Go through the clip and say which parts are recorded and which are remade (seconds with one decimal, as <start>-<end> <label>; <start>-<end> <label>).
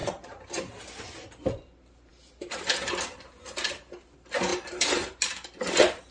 0.0-0.8 remade; 0.8-4.5 recorded; 4.5-5.2 remade; 5.2-6.1 recorded